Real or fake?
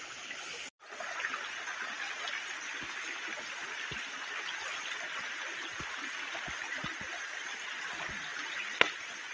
real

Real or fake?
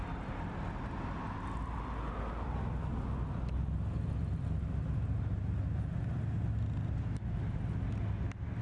real